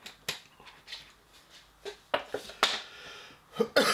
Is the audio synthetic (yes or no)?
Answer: no